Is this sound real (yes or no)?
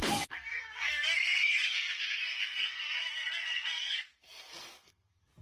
no